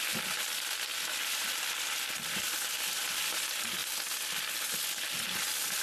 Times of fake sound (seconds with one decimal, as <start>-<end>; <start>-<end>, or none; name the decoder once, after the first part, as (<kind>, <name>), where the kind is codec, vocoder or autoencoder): none